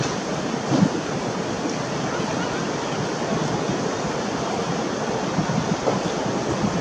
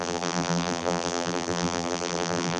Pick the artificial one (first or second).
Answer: second